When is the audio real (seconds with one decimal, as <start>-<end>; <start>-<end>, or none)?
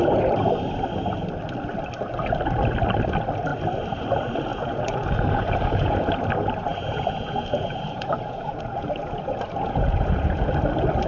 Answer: 0.0-4.5; 6.1-6.7; 10.6-11.1